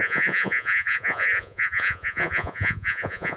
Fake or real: fake